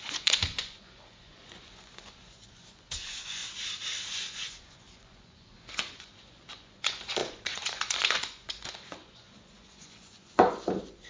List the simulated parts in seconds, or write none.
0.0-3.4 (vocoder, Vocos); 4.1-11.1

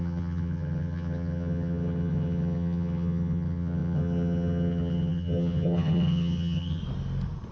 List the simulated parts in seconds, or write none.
0.0-6.8 (vocoder, HiFi-GAN)

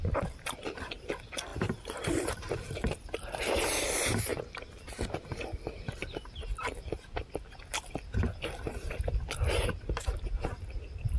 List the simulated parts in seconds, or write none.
1.5-3.4 (vocoder, BigVGAN v2)